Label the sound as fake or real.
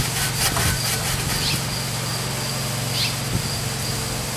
real